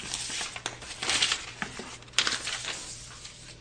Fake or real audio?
real